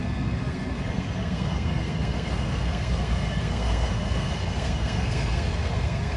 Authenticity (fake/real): fake